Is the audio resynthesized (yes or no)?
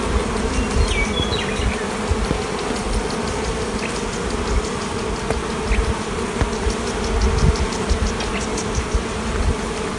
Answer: no